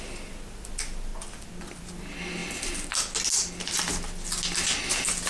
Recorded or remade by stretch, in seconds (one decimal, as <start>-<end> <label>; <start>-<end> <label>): 0.0-5.3 recorded